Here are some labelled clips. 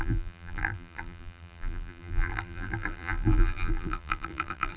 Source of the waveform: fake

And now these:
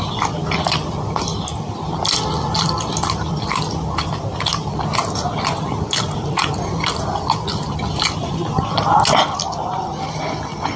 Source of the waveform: real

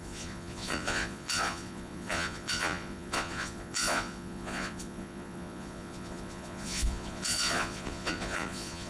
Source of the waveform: fake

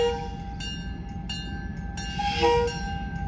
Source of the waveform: real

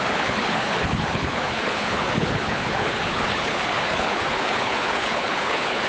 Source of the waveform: fake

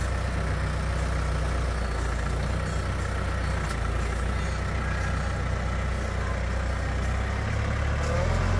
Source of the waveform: real